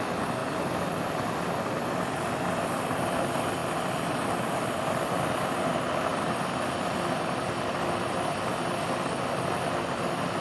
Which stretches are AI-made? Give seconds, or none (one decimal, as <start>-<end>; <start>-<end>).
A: 0.4-1.4; 6.1-8.5